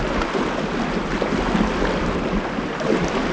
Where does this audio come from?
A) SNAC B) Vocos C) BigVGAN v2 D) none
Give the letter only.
D